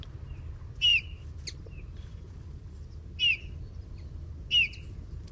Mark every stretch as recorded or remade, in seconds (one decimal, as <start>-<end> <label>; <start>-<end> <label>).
0.0-5.3 recorded